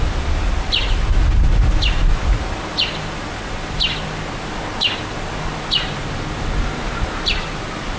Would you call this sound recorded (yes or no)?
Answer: yes